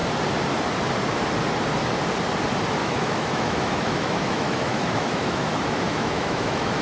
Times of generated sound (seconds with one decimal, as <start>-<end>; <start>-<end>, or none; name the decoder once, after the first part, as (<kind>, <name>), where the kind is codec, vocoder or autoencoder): 2.8-6.8 (autoencoder, DAC-VAE)